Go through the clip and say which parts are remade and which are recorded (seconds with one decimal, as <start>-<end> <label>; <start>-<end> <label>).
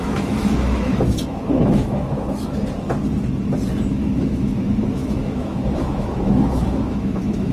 0.0-2.6 remade; 2.6-3.9 recorded; 3.9-7.5 remade